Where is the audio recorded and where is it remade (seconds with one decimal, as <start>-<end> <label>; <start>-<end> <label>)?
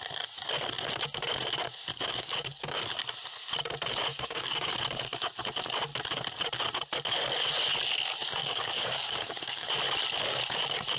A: 0.0-1.9 recorded; 1.9-2.9 remade; 2.9-4.1 recorded; 4.1-4.8 remade; 4.8-8.4 recorded; 8.4-9.7 remade; 9.7-11.0 recorded